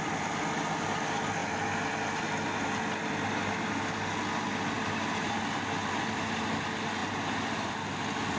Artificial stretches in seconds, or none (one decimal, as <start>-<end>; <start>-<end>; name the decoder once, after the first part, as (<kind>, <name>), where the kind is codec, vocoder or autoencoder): none